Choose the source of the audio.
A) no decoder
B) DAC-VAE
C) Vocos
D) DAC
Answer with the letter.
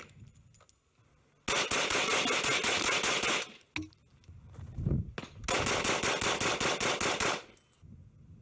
A